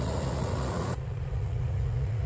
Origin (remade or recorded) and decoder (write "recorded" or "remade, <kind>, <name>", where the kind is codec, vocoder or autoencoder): remade, vocoder, Vocos